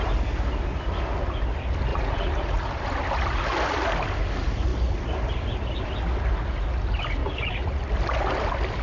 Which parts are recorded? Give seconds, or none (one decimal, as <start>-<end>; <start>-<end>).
0.0-1.9; 2.7-7.2; 7.8-8.8